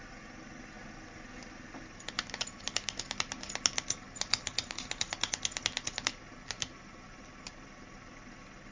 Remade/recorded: recorded